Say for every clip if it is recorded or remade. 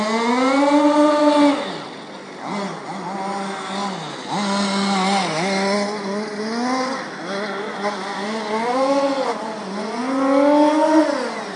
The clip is recorded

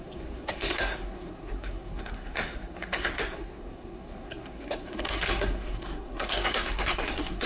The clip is remade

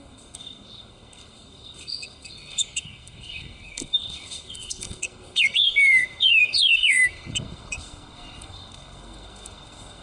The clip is remade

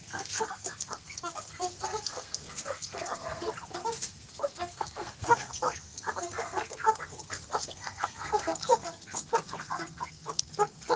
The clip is remade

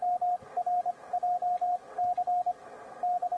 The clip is recorded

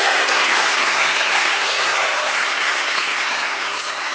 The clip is remade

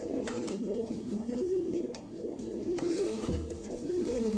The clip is remade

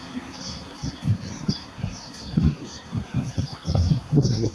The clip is remade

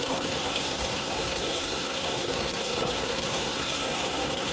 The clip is remade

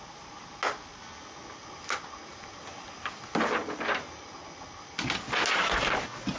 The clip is recorded